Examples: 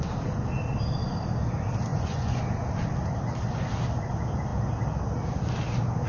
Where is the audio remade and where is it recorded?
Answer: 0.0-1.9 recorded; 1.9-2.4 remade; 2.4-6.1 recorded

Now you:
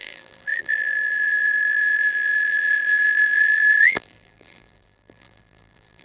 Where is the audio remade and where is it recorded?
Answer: 0.0-6.0 remade

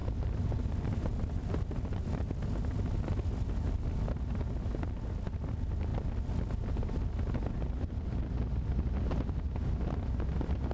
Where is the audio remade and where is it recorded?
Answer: 0.0-10.7 recorded

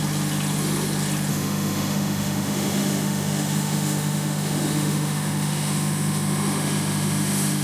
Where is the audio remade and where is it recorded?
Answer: 0.0-1.3 recorded; 1.3-7.6 remade

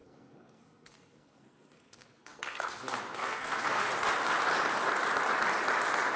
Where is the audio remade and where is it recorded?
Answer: 0.0-2.8 remade; 2.8-3.2 recorded; 3.2-3.9 remade; 3.9-6.2 recorded

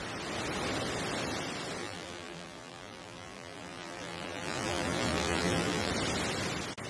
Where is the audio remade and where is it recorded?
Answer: 0.0-1.8 recorded; 1.8-5.9 remade; 5.9-6.9 recorded